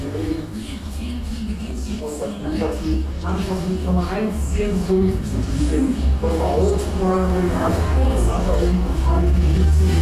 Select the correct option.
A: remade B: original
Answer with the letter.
A